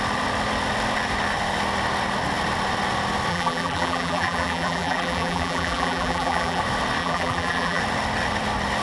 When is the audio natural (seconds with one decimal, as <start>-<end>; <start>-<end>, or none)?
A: 0.0-3.3; 6.6-7.0; 7.8-8.8